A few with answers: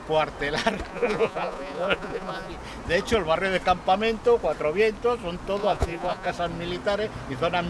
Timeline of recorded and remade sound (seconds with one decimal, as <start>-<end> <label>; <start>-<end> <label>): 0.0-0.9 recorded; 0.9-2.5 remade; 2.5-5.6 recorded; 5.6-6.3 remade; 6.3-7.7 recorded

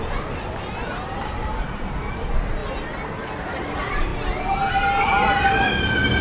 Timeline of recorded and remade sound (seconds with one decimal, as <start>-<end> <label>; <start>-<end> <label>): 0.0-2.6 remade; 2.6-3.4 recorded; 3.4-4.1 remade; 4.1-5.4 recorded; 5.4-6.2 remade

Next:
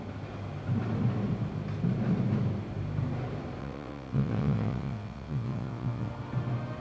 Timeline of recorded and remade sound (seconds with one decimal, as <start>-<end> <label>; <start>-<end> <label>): 0.0-3.6 recorded; 3.6-6.1 remade; 6.1-6.8 recorded

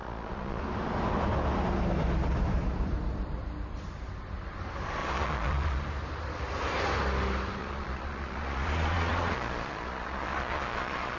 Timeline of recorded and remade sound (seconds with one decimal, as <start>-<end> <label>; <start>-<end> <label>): 0.0-0.6 remade; 0.6-5.0 recorded; 5.0-5.8 remade; 5.8-7.6 recorded; 7.6-11.2 remade

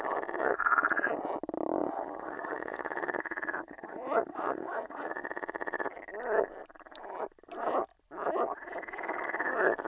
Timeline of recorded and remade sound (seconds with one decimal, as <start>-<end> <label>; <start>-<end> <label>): 0.0-0.4 recorded; 0.4-1.1 remade; 1.1-1.8 recorded; 1.8-5.2 remade; 5.2-9.9 recorded

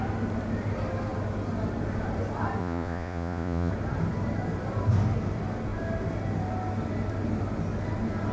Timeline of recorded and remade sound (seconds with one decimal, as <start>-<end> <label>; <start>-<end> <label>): 0.0-2.6 recorded; 2.6-3.7 remade; 3.7-8.3 recorded

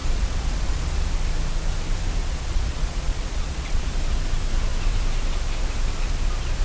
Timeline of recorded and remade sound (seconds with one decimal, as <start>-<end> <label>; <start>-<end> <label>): 0.0-1.1 remade; 1.1-2.2 recorded; 2.2-3.9 remade; 3.9-6.6 recorded

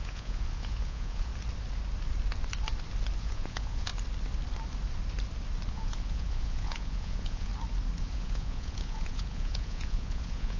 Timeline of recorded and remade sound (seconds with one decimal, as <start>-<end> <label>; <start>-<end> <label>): 0.0-1.3 remade; 1.3-3.2 recorded; 3.2-3.9 remade; 3.9-5.7 recorded; 5.7-7.5 remade; 7.5-8.0 recorded; 8.0-10.6 remade